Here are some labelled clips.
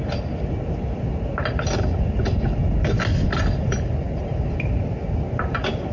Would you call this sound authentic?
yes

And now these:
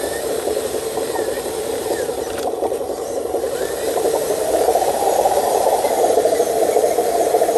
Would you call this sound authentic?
no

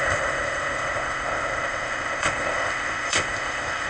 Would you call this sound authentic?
no